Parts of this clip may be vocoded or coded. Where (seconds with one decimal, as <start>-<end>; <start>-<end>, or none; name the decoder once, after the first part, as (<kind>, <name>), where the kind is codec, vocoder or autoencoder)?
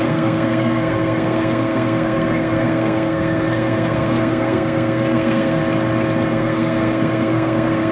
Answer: 0.0-5.6 (codec, SNAC); 6.3-7.9